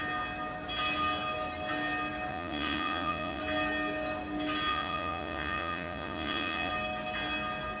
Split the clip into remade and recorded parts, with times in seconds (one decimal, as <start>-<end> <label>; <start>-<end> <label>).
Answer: 0.0-2.3 recorded; 2.3-3.4 remade; 3.4-4.7 recorded; 4.7-6.7 remade; 6.7-7.8 recorded